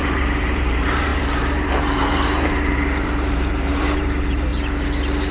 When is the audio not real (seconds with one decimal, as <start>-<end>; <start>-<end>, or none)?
0.0-4.5

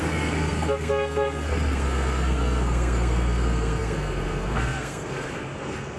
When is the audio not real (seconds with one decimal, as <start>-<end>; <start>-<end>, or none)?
0.0-6.0

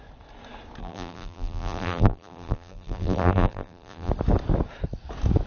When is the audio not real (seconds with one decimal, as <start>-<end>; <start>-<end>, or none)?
0.8-4.1

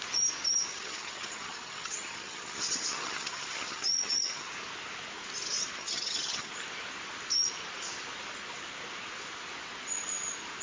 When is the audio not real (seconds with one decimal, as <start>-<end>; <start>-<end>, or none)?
0.7-4.5; 5.8-6.5

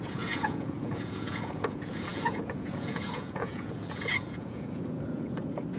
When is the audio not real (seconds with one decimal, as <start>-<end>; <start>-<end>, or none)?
0.0-5.8

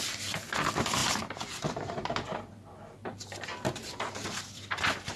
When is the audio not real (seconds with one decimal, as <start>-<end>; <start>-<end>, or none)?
0.0-5.2